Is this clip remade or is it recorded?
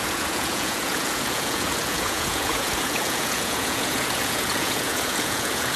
remade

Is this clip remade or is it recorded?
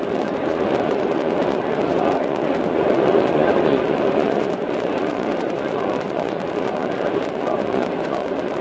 remade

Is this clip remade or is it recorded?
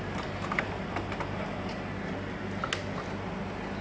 recorded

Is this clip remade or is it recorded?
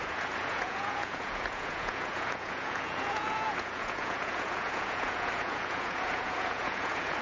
remade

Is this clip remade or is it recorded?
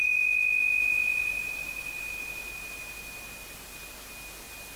recorded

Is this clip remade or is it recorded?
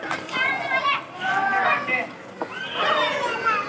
recorded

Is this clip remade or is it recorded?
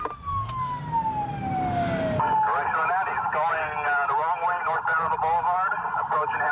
recorded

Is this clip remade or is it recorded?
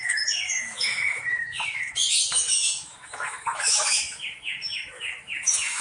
remade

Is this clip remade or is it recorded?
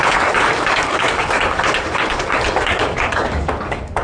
remade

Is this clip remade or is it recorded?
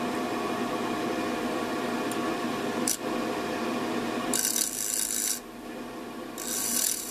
recorded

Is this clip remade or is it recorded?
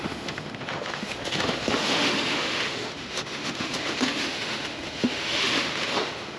remade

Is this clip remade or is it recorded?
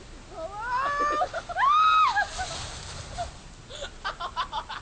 recorded